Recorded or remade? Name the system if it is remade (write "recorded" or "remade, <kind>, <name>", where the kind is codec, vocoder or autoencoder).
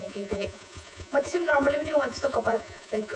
remade, vocoder, Vocos